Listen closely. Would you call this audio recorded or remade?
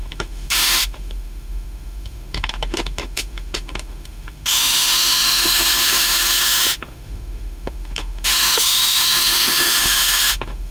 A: remade